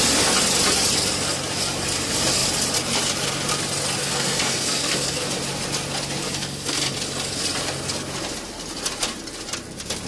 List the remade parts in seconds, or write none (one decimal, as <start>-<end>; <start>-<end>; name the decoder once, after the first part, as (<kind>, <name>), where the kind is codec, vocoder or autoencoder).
4.0-5.2 (codec, SNAC); 6.2-6.9